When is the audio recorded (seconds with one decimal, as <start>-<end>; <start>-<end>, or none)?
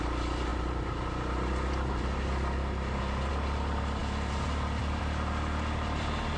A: 0.0-6.4